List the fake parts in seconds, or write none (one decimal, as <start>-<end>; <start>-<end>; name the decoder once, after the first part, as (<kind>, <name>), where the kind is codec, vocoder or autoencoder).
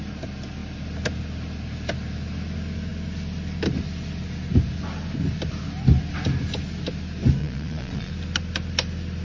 7.4-8.1 (vocoder, Vocos)